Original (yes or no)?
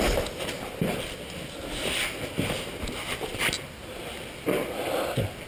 yes